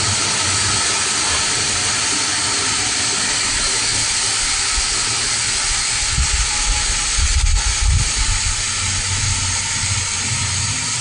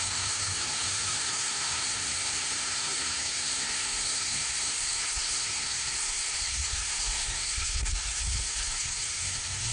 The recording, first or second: first